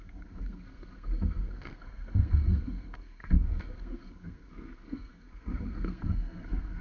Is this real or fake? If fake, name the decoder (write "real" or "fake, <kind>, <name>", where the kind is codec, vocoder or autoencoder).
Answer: fake, codec, SNAC